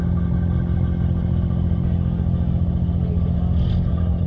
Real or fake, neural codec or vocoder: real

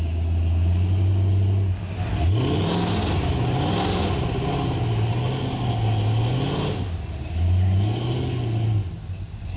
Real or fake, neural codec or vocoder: real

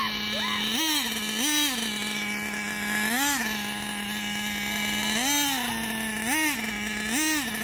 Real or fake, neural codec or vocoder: real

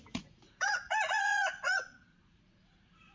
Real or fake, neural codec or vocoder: fake, vocoder, Vocos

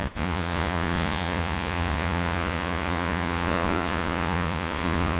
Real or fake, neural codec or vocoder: fake, vocoder, Vocos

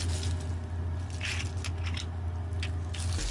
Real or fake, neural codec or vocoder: real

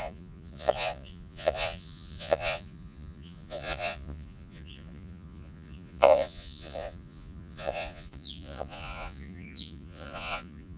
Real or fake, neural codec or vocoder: fake, vocoder, Vocos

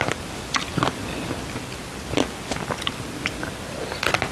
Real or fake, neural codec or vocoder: real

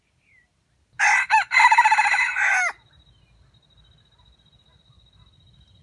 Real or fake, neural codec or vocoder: real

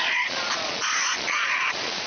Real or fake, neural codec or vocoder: fake, vocoder, Vocos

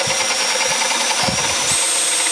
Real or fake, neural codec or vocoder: real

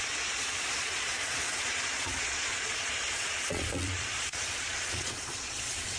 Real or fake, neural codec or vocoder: fake, vocoder, Vocos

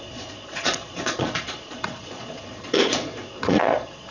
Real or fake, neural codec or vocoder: fake, vocoder, Vocos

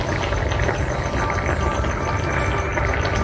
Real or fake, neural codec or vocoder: real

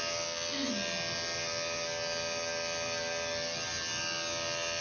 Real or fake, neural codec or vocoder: real